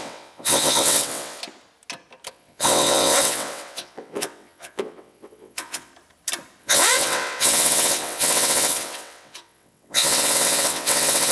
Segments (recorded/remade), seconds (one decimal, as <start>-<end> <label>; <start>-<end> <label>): 0.0-1.4 remade; 1.4-2.3 recorded; 2.3-5.9 remade; 5.9-6.6 recorded; 6.6-11.3 remade